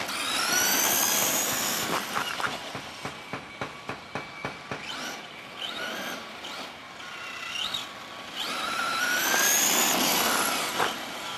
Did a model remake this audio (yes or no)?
no